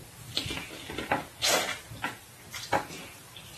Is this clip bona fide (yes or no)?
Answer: yes